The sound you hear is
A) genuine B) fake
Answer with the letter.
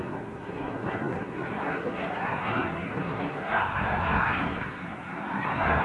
B